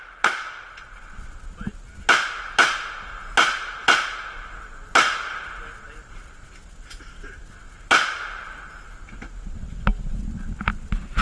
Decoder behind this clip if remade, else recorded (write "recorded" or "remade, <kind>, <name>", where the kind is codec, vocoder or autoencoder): recorded